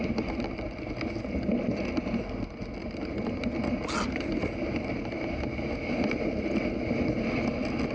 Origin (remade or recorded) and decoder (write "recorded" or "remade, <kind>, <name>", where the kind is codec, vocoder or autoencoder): recorded